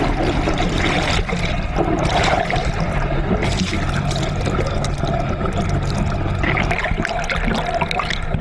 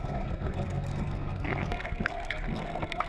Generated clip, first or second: second